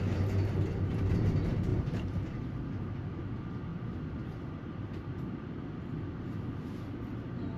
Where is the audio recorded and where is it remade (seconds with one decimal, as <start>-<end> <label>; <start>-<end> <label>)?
0.0-1.7 recorded; 1.7-2.5 remade; 2.5-7.6 recorded

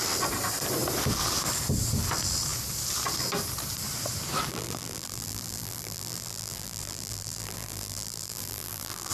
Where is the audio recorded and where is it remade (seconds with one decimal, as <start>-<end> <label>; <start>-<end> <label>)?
0.0-4.5 recorded; 4.5-9.1 remade

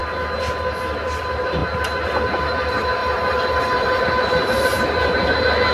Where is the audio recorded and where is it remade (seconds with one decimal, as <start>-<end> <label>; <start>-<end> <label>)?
0.0-3.0 recorded; 3.0-4.0 remade; 4.0-5.7 recorded

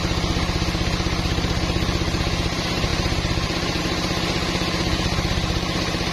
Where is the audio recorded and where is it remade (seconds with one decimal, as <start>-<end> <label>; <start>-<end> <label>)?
0.0-6.1 remade

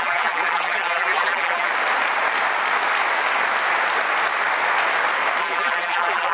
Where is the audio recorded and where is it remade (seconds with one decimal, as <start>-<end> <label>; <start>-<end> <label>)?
0.0-1.7 remade; 1.7-5.4 recorded; 5.4-6.3 remade